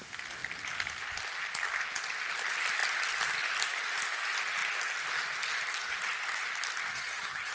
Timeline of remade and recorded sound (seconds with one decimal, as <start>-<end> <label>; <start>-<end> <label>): 0.0-6.9 recorded; 6.9-7.5 remade